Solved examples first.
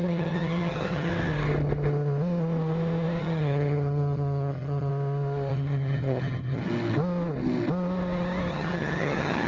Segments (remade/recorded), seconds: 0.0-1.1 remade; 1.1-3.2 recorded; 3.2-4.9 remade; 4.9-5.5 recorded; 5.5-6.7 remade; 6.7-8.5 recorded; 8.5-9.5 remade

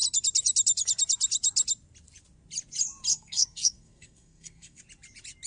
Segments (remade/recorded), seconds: 0.0-3.1 recorded; 3.1-4.8 remade; 4.8-5.5 recorded

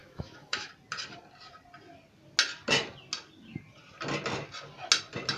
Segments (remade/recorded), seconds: 0.0-0.7 remade; 0.7-5.4 recorded